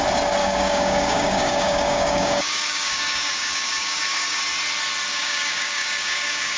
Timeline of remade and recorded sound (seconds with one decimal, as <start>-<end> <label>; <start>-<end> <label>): 0.0-0.4 recorded; 0.4-4.4 remade; 4.4-5.1 recorded; 5.1-6.6 remade